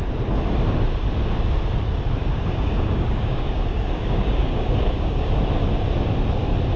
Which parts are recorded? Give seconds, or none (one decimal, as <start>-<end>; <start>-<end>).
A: 0.0-2.2; 5.4-6.8